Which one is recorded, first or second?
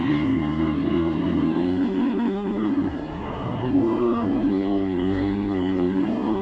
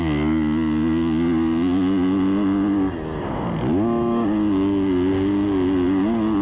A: second